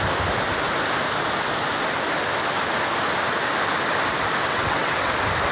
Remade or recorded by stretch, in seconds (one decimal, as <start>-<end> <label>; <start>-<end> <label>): 0.0-4.4 recorded; 4.4-5.1 remade; 5.1-5.5 recorded